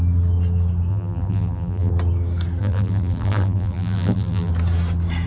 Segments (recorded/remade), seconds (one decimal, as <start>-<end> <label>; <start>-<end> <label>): 0.0-0.9 recorded; 0.9-1.9 remade; 1.9-2.6 recorded; 2.6-4.5 remade; 4.5-5.3 recorded

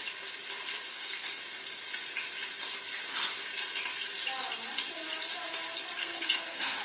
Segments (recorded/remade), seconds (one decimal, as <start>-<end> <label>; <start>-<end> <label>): 0.0-0.9 recorded; 0.9-1.4 remade; 1.4-6.0 recorded; 6.0-6.8 remade